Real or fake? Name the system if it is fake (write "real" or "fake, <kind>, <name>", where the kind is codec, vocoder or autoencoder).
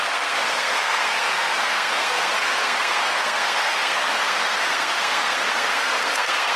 fake, codec, SNAC